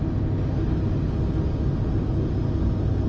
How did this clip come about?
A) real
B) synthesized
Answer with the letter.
A